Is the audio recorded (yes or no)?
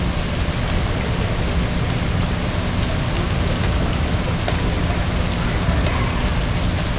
yes